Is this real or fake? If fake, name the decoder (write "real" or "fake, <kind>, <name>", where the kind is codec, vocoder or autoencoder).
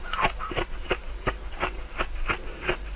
real